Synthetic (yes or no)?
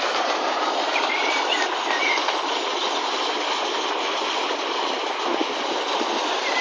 no